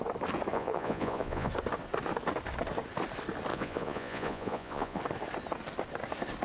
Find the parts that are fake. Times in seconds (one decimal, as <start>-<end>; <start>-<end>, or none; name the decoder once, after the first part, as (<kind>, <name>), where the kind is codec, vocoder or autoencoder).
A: 0.5-1.5 (vocoder, Vocos); 3.5-5.0